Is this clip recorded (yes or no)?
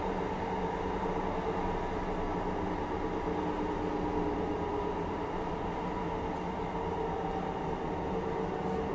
yes